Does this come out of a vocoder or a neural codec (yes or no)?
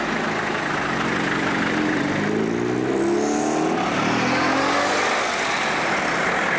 no